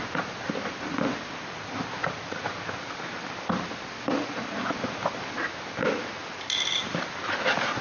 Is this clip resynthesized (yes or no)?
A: no